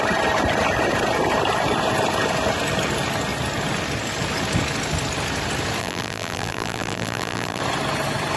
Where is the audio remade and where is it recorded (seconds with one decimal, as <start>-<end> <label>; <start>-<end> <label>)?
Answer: 0.0-5.8 recorded; 5.8-7.6 remade; 7.6-8.4 recorded